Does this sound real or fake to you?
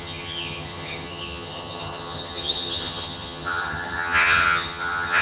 fake